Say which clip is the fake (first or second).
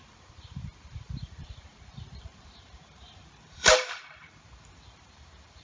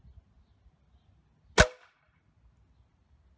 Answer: first